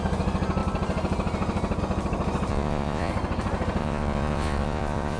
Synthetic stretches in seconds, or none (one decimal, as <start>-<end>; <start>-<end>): 2.5-3.1; 3.8-5.2